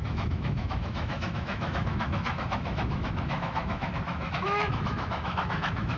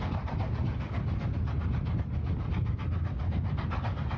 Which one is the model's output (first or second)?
first